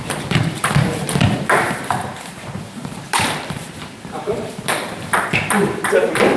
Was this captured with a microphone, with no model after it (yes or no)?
no